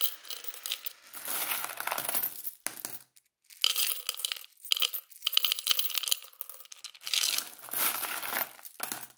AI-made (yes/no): no